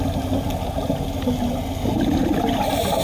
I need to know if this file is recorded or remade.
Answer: recorded